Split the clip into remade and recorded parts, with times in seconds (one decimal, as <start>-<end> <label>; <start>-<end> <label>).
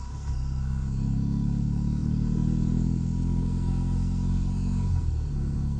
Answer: 0.0-5.8 remade